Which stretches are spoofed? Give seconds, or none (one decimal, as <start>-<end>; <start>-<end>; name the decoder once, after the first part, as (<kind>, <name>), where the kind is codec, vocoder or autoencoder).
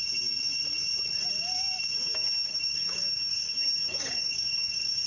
1.9-5.1 (codec, DAC)